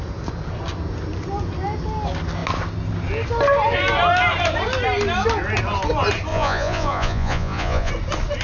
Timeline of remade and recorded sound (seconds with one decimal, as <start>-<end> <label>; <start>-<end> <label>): 0.0-6.3 recorded; 6.3-7.9 remade; 7.9-8.4 recorded